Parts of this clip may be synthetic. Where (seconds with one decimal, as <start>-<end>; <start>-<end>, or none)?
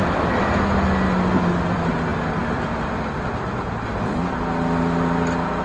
none